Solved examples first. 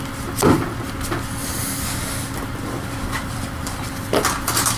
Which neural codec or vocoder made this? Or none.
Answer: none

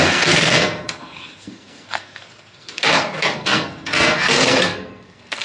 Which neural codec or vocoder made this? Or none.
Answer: codec, SNAC